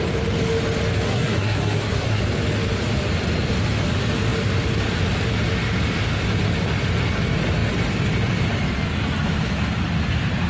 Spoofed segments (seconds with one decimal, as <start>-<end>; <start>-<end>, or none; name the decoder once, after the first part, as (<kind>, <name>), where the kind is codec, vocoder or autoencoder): 1.1-2.2 (codec, SNAC)